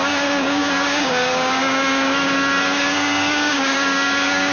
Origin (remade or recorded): remade